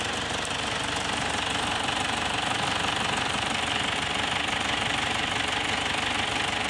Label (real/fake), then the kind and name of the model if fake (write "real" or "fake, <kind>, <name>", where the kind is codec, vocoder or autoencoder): fake, vocoder, BigVGAN v2